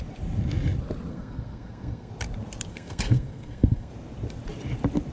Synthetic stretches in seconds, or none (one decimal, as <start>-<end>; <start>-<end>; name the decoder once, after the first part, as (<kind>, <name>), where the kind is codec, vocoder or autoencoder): 1.1-2.1 (codec, SNAC); 2.7-3.9